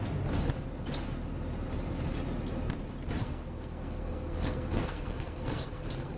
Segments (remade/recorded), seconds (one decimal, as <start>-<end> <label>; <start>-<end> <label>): 0.0-3.2 recorded; 3.2-6.2 remade